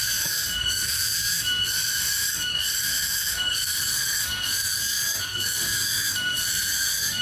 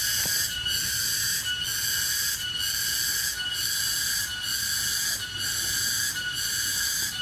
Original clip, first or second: second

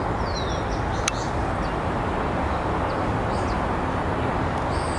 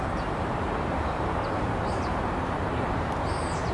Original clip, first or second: first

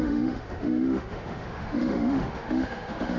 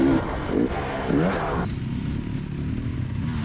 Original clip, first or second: second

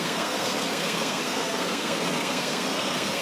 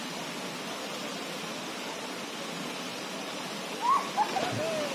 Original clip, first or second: second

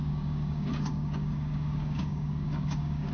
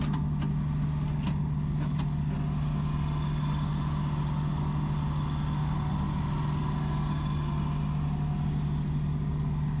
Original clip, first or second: second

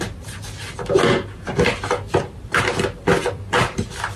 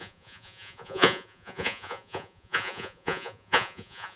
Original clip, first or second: first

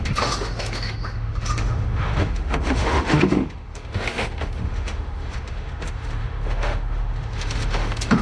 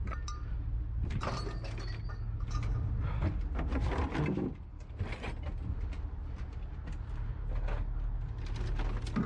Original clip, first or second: second